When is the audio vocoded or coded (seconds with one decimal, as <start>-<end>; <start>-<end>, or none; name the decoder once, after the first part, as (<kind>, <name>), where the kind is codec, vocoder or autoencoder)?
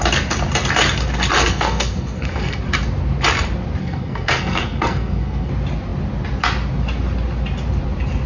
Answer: 1.4-2.6 (codec, SNAC); 3.8-5.5